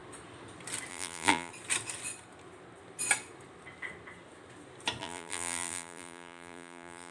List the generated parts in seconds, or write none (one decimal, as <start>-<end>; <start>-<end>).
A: 0.9-1.5; 5.0-7.1